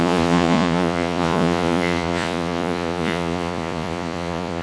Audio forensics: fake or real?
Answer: fake